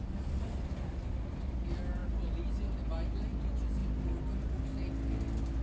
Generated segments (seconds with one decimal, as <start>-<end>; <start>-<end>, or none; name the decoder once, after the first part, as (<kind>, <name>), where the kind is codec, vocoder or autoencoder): none